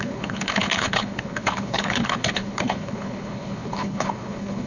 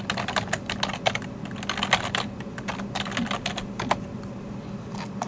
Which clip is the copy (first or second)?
first